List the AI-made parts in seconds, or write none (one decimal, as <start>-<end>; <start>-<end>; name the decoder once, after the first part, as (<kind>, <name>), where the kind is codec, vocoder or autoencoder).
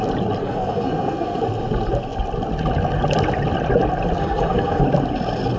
0.4-1.4 (codec, SNAC); 4.2-4.8